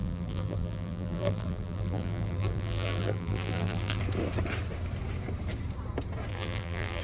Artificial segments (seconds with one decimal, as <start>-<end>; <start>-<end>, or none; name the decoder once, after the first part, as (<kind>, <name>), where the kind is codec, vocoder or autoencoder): 0.0-4.0 (vocoder, BigVGAN v2); 6.3-7.0